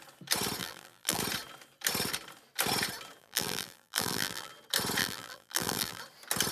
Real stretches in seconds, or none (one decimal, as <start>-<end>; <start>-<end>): 0.0-0.6; 1.2-3.2; 4.5-5.0; 6.0-6.5